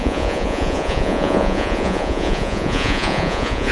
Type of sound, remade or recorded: remade